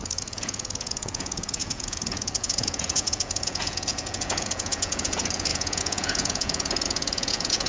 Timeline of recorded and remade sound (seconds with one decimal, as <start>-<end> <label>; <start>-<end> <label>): 0.0-7.7 remade